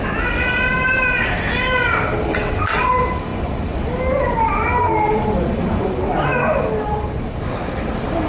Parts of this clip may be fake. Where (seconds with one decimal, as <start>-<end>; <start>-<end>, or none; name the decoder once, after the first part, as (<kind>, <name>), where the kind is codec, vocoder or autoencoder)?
2.3-2.9 (vocoder, WaveNeXt)